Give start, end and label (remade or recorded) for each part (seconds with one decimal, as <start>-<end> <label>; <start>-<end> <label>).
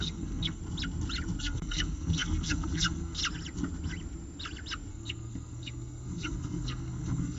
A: 0.0-0.6 remade; 0.6-1.4 recorded; 1.4-3.2 remade; 3.2-4.9 recorded; 4.9-7.4 remade